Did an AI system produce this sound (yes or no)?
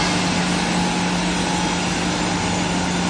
no